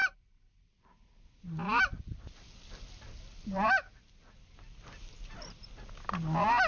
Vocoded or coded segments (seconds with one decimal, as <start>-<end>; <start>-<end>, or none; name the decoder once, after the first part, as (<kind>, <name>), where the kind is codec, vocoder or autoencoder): none